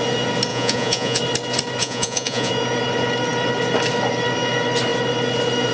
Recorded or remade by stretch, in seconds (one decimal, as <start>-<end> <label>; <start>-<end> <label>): 0.0-0.5 recorded; 0.5-1.2 remade; 1.2-1.8 recorded; 1.8-2.5 remade; 2.5-5.7 recorded